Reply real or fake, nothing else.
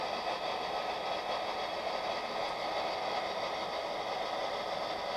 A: real